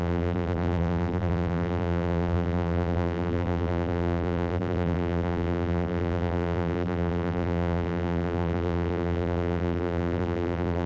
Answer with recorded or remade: remade